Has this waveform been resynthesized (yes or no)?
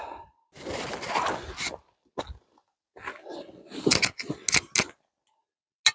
no